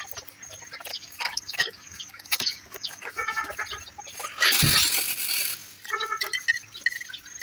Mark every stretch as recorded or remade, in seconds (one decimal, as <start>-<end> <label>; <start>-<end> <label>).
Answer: 0.0-0.9 recorded; 0.9-3.5 remade; 3.5-7.4 recorded